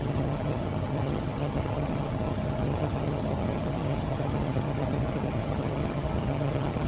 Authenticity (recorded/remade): remade